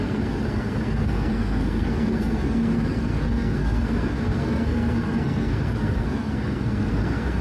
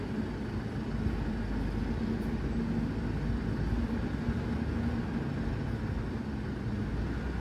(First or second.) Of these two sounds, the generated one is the first